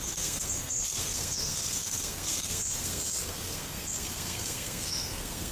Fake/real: fake